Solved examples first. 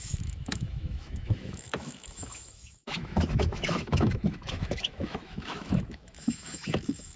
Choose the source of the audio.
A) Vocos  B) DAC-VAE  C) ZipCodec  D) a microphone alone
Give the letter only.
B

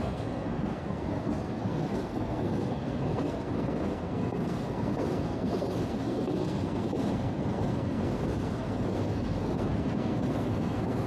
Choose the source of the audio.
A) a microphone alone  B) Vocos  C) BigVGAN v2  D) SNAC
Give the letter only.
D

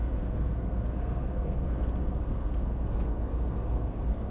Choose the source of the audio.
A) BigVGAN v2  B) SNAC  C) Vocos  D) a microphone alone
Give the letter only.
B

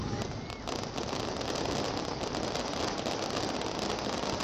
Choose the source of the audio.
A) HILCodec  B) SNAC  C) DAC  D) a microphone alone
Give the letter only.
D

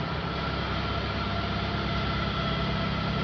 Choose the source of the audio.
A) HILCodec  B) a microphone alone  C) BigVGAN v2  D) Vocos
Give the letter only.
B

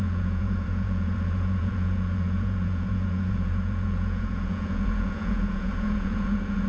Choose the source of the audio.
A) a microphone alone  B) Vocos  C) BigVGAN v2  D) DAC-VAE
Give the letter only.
B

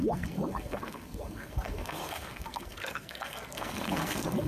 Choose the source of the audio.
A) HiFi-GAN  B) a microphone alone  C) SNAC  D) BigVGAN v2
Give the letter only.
C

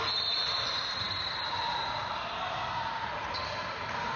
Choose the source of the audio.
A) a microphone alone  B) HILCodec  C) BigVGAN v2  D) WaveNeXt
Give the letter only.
C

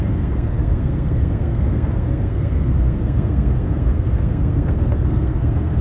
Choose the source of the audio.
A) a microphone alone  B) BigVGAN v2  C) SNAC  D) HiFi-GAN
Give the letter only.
C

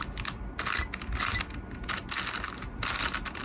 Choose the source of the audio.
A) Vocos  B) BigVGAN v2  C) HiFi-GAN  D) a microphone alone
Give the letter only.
D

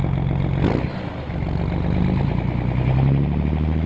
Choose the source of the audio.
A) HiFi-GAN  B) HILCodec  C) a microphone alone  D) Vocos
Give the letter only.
C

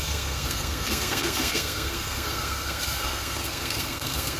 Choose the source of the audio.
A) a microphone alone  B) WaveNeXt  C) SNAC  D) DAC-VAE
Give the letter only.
C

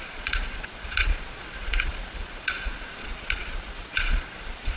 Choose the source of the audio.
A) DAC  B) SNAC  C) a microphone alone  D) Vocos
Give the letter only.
D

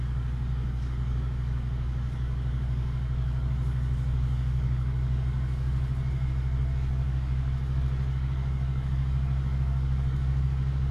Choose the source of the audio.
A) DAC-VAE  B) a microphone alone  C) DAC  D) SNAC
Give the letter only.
C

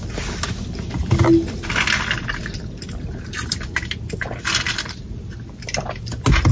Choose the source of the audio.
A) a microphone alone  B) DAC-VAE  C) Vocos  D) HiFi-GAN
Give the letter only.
A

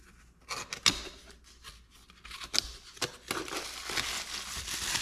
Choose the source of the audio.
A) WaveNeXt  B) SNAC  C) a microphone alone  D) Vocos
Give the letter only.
C